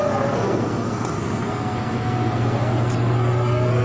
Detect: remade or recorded remade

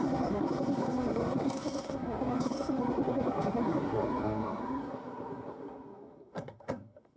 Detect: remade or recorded remade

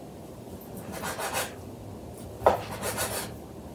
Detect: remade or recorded recorded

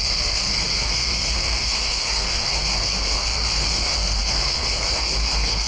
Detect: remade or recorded remade